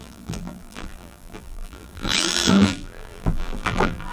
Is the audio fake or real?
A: fake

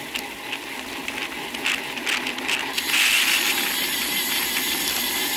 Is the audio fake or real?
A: real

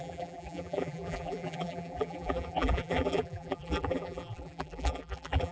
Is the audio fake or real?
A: fake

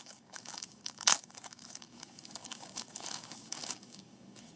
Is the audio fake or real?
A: fake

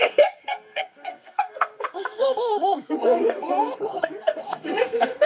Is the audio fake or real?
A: fake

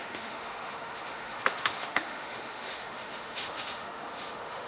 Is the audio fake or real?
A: fake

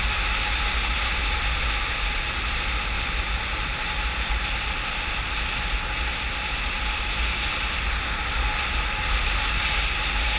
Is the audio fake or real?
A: real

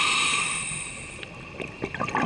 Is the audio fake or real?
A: real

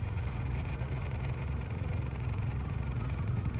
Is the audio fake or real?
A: fake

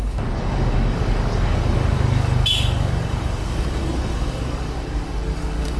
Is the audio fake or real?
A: fake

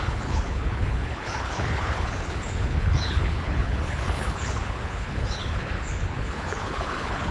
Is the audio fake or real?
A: fake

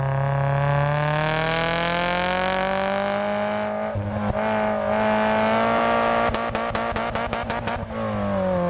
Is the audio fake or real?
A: real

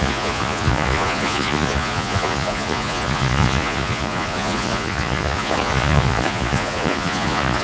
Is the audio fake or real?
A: fake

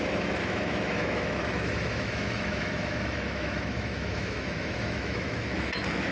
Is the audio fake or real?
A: fake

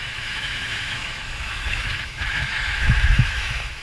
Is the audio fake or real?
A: fake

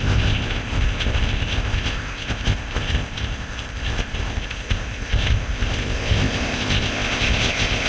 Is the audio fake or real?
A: fake